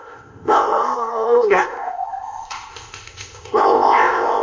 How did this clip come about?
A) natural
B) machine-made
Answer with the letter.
B